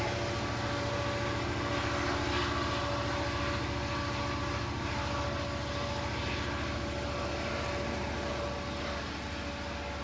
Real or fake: real